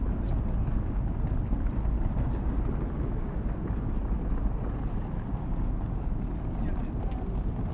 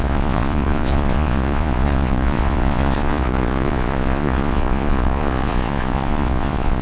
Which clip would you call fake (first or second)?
second